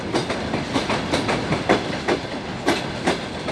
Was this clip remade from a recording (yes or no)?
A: no